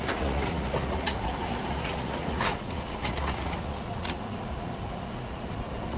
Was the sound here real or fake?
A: fake